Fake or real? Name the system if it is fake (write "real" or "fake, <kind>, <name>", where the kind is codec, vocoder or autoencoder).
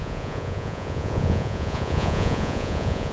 fake, vocoder, Vocos